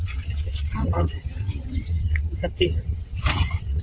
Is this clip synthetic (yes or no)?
yes